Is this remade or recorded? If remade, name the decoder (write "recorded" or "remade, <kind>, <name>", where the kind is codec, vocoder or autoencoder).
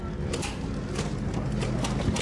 remade, vocoder, BigVGAN v2